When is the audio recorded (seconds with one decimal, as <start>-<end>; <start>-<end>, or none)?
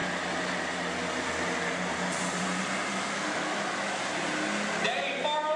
0.0-2.9; 4.0-5.6